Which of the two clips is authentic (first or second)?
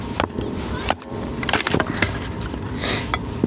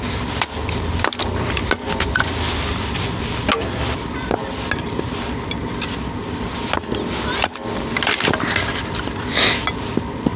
second